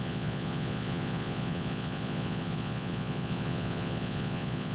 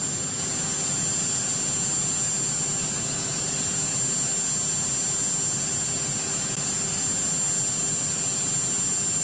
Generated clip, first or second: first